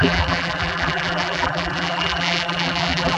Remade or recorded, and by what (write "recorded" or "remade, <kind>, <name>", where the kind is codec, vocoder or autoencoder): remade, vocoder, BigVGAN v2